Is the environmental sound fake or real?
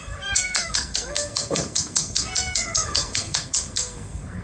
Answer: fake